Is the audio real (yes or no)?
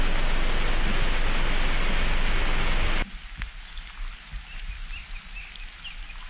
yes